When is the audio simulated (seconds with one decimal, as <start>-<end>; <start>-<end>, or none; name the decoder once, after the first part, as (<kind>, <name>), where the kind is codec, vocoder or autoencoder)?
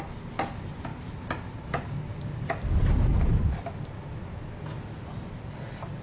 none